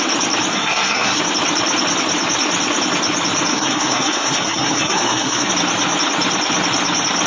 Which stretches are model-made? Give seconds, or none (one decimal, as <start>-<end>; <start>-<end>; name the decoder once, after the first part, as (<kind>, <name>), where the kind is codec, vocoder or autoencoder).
0.5-1.2 (codec, SNAC); 3.5-5.5